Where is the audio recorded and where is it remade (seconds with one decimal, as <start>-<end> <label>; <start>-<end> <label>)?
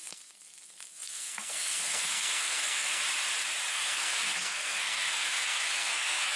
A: 0.0-3.0 remade; 3.0-3.7 recorded; 3.7-6.4 remade